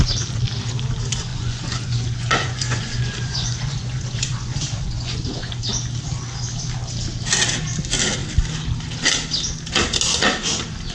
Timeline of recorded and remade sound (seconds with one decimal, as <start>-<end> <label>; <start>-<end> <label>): 0.0-1.3 recorded; 1.3-5.5 remade; 5.5-10.9 recorded